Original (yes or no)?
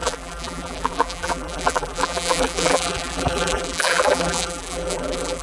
no